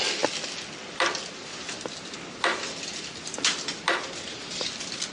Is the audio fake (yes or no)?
no